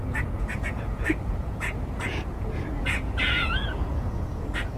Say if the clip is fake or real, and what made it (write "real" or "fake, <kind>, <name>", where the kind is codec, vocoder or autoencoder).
fake, vocoder, Vocos